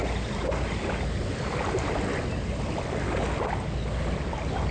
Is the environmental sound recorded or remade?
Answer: recorded